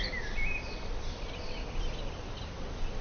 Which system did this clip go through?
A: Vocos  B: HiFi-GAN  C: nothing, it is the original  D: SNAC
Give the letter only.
C